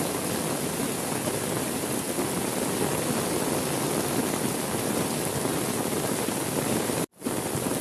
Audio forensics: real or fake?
real